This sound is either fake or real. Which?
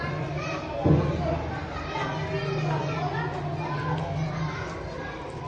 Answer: real